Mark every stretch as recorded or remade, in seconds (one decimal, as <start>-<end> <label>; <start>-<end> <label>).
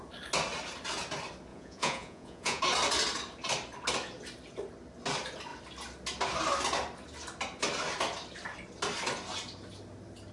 0.0-1.5 recorded; 1.5-2.6 remade; 2.6-10.3 recorded